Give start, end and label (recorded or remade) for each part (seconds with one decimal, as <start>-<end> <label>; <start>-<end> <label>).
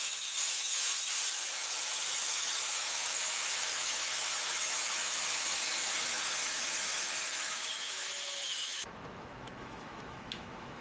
0.0-10.8 remade